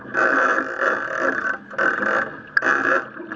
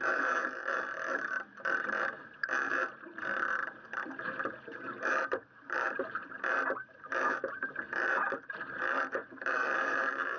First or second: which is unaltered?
first